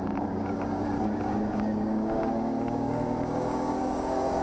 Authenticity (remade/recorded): remade